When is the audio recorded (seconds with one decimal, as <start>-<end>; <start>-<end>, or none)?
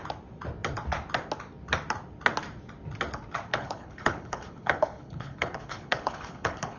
0.0-3.5